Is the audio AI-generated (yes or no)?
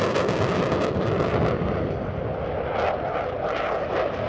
no